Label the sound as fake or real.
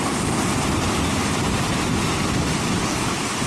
real